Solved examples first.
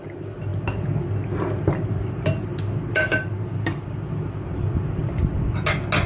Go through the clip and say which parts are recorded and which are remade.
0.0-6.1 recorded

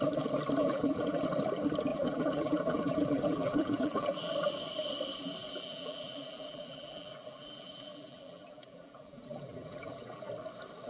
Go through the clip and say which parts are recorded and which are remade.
0.0-0.6 recorded; 0.6-1.2 remade; 1.2-1.9 recorded; 1.9-4.3 remade; 4.3-5.4 recorded; 5.4-10.3 remade; 10.3-10.9 recorded

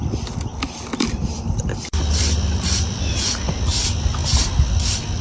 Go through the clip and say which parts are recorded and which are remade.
0.0-0.5 recorded; 0.5-3.5 remade; 3.5-4.2 recorded; 4.2-5.2 remade

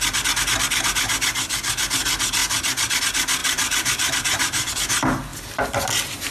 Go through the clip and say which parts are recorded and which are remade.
0.0-3.4 recorded; 3.4-4.7 remade; 4.7-6.3 recorded

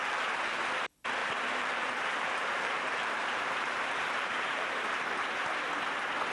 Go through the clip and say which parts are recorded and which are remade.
0.0-0.6 remade; 0.6-1.2 recorded; 1.2-4.7 remade; 4.7-6.3 recorded

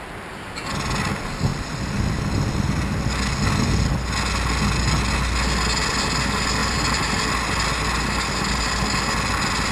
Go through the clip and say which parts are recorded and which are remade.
0.0-6.6 recorded; 6.6-7.2 remade; 7.2-9.7 recorded